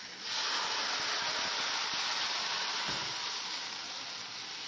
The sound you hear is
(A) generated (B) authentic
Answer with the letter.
B